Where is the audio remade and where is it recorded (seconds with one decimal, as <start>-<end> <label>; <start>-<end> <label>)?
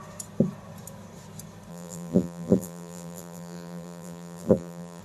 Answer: 0.0-1.7 recorded; 1.7-5.0 remade